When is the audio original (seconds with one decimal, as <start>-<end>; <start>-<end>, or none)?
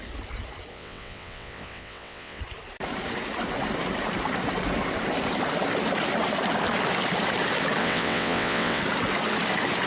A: 0.0-0.7; 2.4-7.8; 8.8-9.9